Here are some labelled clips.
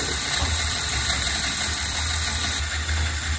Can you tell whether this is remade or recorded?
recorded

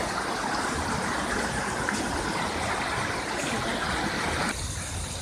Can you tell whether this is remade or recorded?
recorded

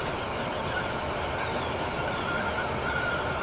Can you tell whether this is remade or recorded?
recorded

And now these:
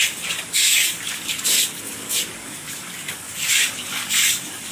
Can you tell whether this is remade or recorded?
remade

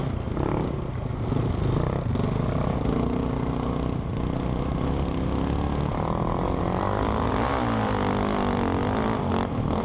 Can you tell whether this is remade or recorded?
recorded